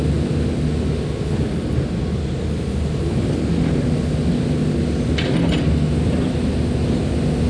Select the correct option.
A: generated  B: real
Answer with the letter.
B